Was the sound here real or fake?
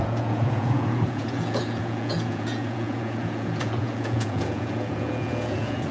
fake